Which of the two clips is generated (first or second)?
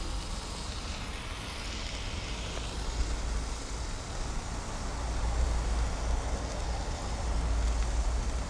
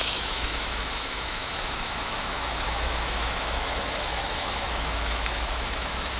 second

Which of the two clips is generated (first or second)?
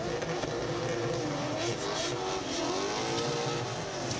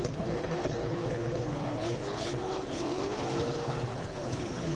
second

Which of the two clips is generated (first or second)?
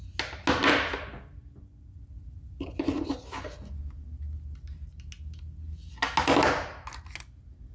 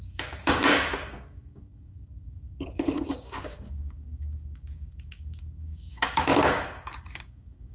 second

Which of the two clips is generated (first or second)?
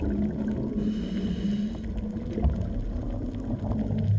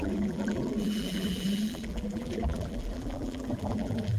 second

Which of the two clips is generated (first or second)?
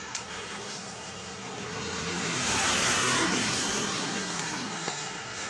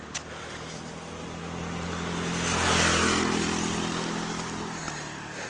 first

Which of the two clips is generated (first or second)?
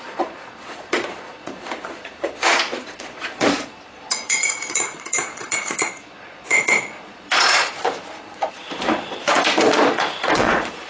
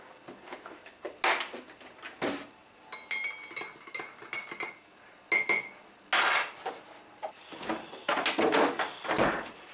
first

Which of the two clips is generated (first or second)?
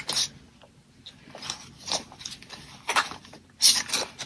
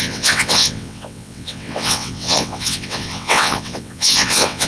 second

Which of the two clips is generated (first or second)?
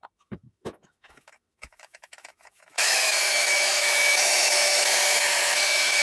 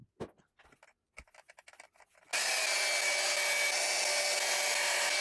first